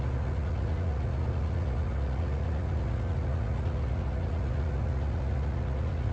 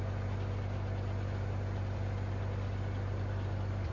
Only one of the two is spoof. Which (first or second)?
first